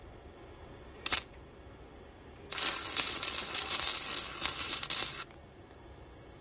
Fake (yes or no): no